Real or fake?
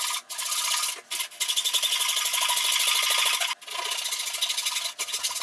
real